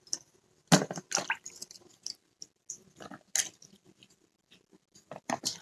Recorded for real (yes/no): yes